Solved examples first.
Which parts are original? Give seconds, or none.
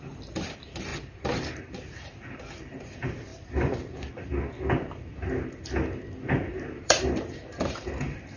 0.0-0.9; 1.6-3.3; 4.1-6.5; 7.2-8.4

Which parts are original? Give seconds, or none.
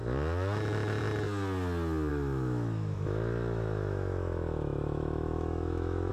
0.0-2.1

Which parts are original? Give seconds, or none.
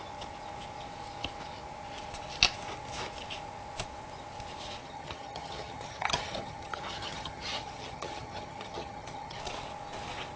0.0-4.8; 9.4-10.4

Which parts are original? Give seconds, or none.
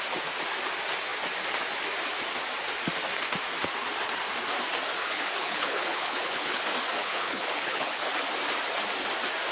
0.0-5.0; 6.6-7.0; 8.1-9.5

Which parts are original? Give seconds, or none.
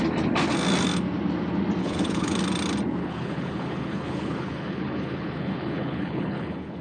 0.0-1.8; 2.4-3.0